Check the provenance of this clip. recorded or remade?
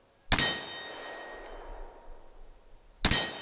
recorded